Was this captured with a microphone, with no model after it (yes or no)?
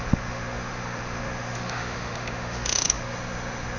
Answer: no